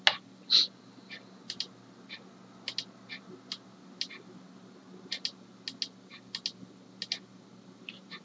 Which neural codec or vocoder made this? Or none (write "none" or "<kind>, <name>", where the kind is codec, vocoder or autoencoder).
none